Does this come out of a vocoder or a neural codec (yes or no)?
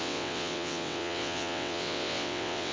yes